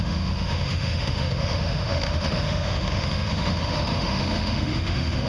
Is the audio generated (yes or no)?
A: yes